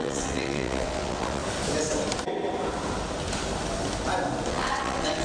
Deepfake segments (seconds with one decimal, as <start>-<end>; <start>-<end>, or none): 0.0-1.4; 4.5-5.2